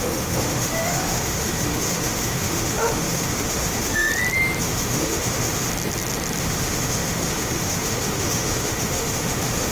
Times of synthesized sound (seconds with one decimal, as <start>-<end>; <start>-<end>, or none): 0.0-4.1; 4.6-5.7; 6.4-9.7